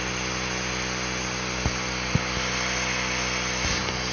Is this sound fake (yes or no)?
no